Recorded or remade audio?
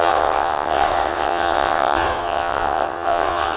remade